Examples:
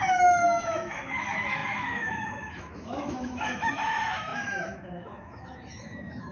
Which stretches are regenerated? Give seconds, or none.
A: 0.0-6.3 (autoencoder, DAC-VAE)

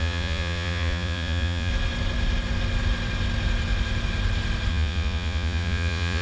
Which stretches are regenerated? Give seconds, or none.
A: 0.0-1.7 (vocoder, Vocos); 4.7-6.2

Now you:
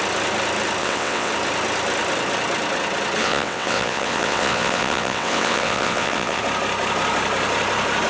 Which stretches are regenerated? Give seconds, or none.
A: 0.8-1.3 (vocoder, WaveNeXt); 3.2-6.4

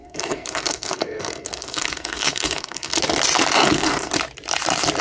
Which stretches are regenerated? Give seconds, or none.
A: 0.0-3.0 (codec, SNAC); 3.6-4.1